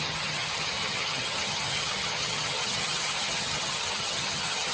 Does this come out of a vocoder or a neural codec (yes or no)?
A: yes